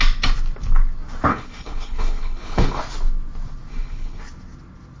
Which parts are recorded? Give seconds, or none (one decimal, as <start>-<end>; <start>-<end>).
0.0-1.3; 2.8-3.7; 4.2-5.0

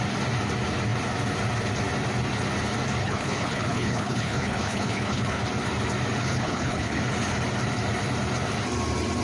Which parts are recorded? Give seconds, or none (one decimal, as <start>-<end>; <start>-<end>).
0.0-3.0; 5.4-6.2; 7.0-9.2

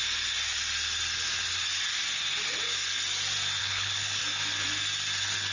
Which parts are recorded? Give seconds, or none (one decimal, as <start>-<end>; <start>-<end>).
0.0-3.6; 4.2-5.5

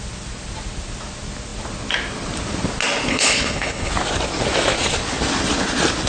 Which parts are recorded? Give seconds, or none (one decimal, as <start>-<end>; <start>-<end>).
0.0-3.1; 3.9-6.1

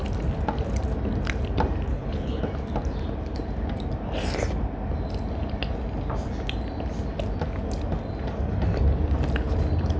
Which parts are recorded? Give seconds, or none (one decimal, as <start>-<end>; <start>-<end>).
0.0-1.9; 2.4-10.0